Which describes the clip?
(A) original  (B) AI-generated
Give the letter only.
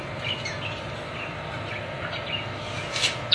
A